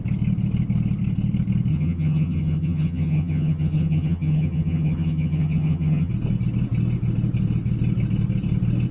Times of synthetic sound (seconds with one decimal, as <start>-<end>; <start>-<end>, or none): 1.7-6.1